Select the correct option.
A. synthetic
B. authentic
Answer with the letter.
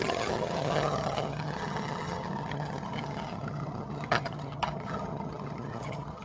A